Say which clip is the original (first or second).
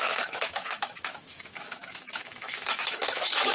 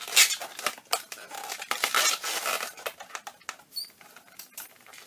second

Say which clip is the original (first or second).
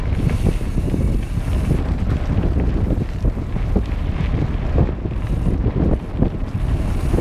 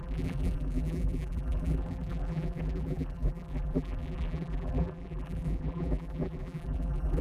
first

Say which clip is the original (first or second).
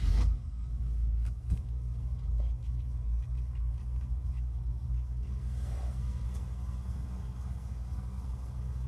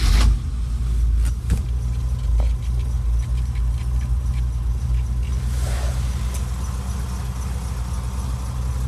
second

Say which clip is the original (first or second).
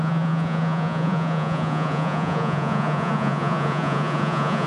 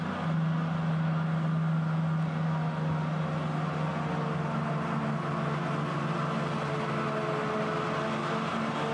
second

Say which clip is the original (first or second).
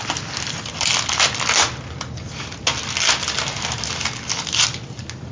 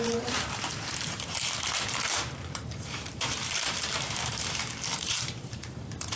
first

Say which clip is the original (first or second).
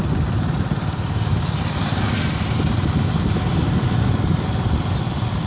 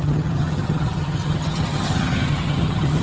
first